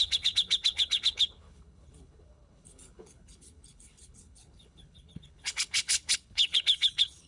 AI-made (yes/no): yes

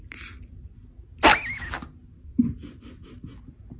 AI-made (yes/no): no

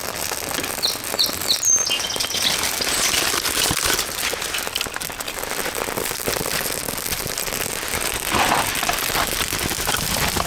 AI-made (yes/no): no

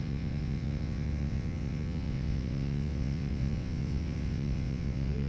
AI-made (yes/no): yes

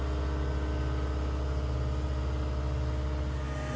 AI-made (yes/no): no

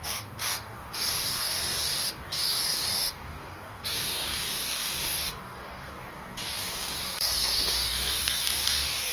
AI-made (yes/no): yes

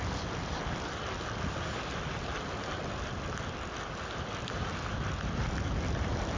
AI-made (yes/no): no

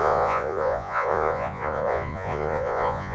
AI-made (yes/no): yes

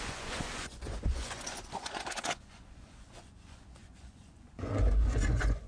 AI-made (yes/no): yes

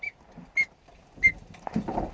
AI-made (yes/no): no